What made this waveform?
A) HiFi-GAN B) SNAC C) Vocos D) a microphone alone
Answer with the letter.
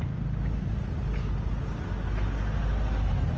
D